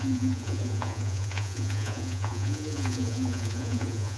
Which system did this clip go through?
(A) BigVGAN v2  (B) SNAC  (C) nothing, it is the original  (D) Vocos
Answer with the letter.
D